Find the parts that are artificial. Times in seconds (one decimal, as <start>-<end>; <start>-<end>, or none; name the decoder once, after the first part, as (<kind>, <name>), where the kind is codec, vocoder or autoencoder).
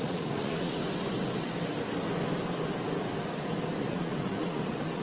0.0-0.8 (vocoder, Vocos); 3.8-5.0